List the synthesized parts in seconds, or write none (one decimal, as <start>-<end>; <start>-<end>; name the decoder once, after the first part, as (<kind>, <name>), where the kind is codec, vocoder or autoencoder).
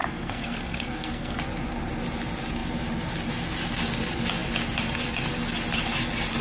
0.0-1.4 (codec, SNAC)